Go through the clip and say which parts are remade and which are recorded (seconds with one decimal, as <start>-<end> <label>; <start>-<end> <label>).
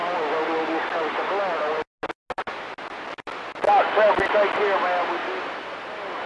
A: 0.0-6.3 recorded